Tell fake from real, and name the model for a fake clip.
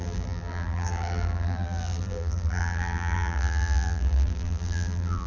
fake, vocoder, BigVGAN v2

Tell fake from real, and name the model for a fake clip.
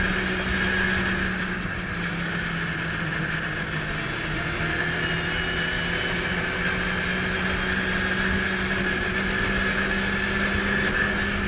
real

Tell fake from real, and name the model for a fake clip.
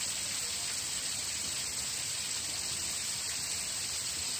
fake, vocoder, BigVGAN v2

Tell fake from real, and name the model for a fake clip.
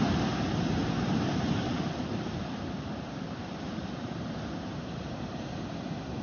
fake, vocoder, BigVGAN v2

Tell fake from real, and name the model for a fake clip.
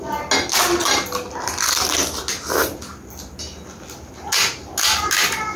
real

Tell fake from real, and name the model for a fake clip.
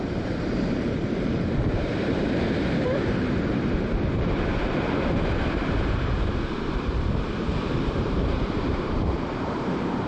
fake, vocoder, BigVGAN v2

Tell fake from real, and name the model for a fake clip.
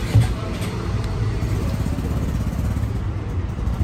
fake, vocoder, BigVGAN v2